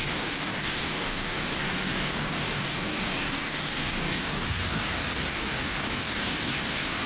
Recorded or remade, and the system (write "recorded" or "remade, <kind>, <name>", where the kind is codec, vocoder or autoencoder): remade, codec, DAC